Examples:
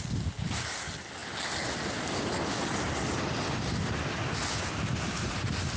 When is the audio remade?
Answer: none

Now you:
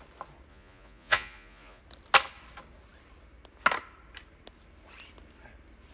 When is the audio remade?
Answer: 0.5-1.8 (vocoder, Vocos)

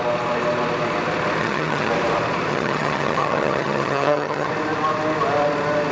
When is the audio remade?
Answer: 1.4-1.9 (vocoder, HiFi-GAN); 2.5-4.5

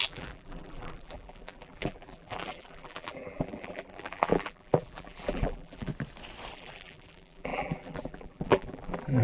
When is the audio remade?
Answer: 0.0-5.9 (vocoder, BigVGAN v2); 6.5-9.2

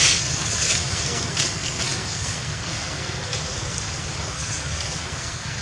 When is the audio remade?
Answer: 0.0-5.6 (codec, SNAC)

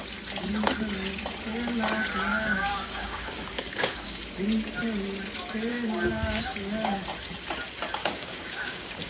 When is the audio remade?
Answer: 2.3-4.2 (codec, DAC); 5.7-6.4; 8.0-9.1

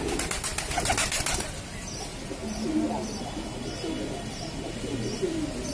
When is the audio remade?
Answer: none